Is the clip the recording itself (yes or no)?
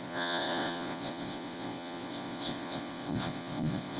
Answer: no